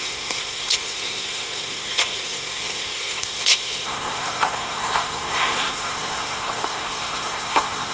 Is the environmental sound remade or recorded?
remade